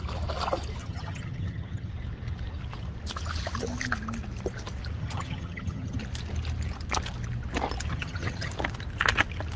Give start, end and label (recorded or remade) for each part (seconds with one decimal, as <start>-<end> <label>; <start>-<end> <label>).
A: 0.0-0.8 recorded; 0.8-1.9 remade; 1.9-5.0 recorded; 5.0-6.0 remade; 6.0-7.9 recorded; 7.9-8.5 remade; 8.5-9.6 recorded